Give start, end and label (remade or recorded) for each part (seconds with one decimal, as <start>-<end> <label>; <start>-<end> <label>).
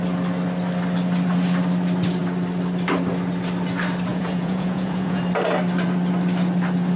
0.0-4.1 recorded; 4.1-5.2 remade; 5.2-7.0 recorded